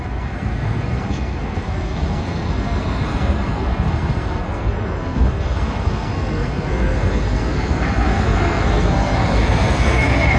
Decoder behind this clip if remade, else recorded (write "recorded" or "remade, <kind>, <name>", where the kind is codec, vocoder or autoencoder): remade, codec, SNAC